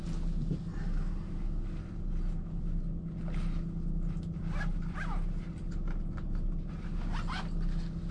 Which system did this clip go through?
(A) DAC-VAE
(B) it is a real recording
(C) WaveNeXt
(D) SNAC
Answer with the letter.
B